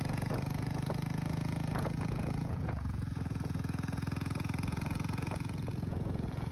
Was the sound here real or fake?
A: fake